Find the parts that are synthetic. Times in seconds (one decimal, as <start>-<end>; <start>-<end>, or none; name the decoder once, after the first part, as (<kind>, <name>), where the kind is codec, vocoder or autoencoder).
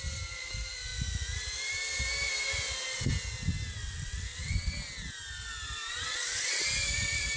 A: 3.8-4.7 (vocoder, WaveNeXt); 5.9-6.6